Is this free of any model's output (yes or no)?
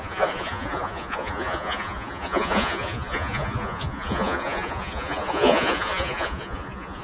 no